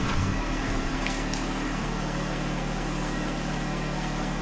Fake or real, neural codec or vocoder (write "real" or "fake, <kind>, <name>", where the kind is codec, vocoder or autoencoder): fake, codec, SNAC